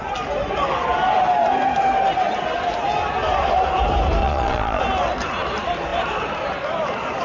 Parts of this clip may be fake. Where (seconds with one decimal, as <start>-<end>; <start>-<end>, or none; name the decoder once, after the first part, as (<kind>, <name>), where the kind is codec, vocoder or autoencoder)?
4.2-4.8 (vocoder, Vocos)